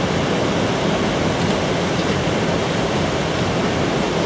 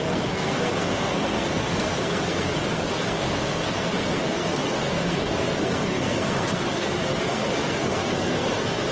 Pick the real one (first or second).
first